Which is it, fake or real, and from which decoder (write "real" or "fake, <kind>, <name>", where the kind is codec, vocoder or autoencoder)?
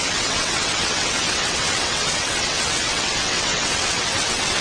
fake, vocoder, WaveNeXt